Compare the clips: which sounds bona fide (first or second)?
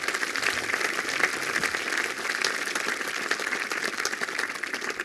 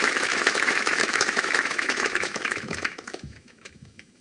first